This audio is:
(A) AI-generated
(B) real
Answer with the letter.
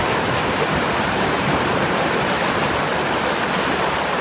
B